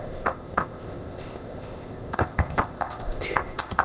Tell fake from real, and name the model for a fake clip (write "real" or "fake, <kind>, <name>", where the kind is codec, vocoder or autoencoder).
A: fake, codec, ZipCodec